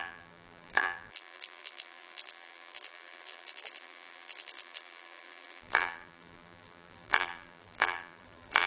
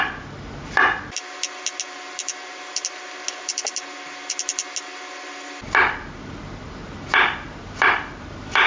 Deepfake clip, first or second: first